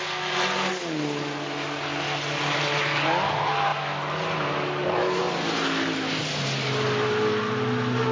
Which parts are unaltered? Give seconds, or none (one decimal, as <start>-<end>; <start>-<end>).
0.0-8.1